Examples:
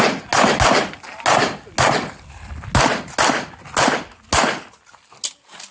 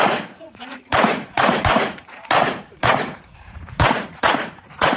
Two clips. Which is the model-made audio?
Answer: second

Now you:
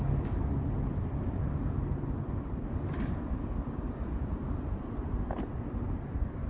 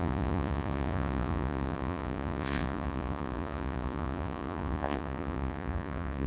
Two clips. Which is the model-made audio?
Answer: second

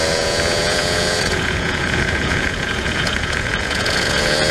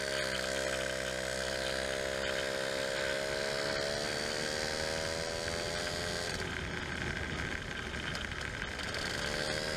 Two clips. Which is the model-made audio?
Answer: first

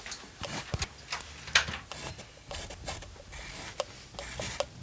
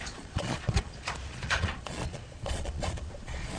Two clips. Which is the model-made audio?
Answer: second